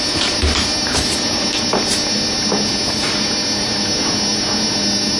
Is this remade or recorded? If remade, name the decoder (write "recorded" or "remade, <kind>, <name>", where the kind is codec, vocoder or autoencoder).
remade, vocoder, BigVGAN v2